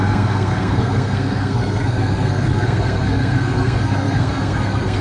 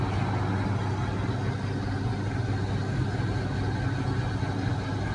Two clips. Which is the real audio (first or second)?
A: second